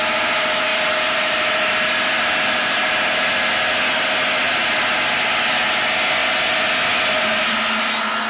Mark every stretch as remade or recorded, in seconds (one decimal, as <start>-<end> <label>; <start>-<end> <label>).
0.0-0.7 recorded; 0.7-3.5 remade; 3.5-8.3 recorded